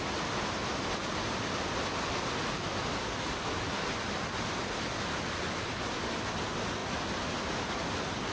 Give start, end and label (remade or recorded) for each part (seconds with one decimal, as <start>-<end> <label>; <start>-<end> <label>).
0.0-8.3 recorded